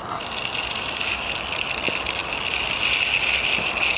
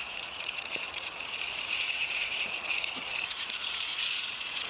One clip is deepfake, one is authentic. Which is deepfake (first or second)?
second